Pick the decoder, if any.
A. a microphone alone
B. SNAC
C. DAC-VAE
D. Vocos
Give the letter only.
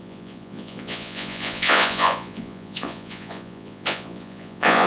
D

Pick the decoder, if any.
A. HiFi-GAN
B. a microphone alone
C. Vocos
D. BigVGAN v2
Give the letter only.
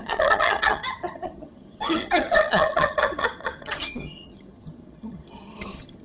A